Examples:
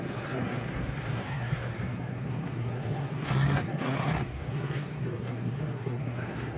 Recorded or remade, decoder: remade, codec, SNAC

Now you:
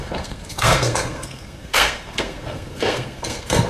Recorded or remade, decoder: remade, codec, SNAC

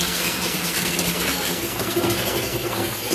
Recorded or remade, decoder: remade, codec, SNAC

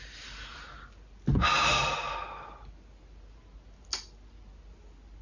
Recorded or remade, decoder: recorded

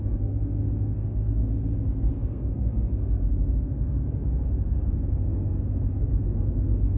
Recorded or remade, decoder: remade, codec, SNAC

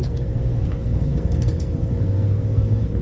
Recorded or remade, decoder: remade, codec, SNAC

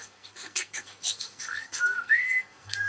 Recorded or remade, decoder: remade, codec, SNAC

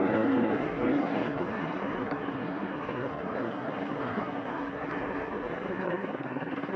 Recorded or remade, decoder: remade, codec, SNAC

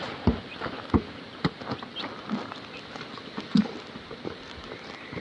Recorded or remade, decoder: recorded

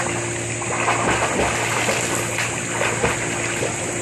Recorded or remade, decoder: recorded